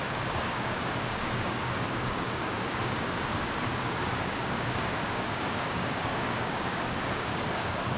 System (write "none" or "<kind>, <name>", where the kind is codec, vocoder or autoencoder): codec, DAC